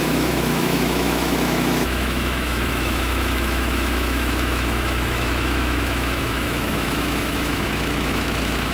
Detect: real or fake fake